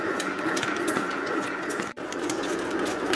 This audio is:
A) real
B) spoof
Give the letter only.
B